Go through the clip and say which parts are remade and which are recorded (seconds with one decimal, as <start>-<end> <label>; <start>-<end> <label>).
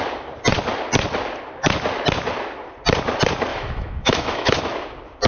0.0-3.5 recorded; 3.5-4.6 remade; 4.6-5.3 recorded